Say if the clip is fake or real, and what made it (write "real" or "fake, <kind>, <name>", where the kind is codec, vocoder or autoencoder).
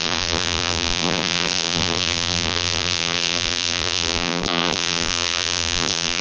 fake, vocoder, BigVGAN v2